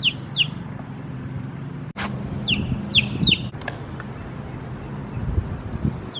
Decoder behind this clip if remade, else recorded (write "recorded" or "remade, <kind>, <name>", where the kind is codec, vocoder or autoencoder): recorded